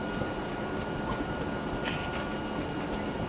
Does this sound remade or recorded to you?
recorded